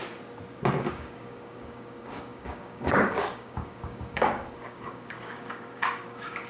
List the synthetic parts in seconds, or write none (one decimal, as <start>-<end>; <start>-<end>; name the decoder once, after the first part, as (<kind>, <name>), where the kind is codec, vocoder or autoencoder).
0.9-6.5 (codec, DAC)